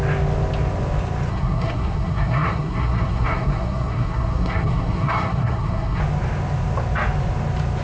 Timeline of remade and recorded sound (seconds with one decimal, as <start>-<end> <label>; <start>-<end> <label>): 0.0-1.3 recorded; 1.3-6.0 remade; 6.0-7.8 recorded